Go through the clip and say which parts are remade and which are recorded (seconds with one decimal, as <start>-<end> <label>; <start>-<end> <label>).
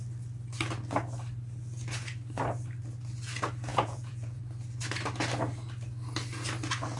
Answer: 0.0-3.7 recorded; 3.7-4.4 remade; 4.4-7.0 recorded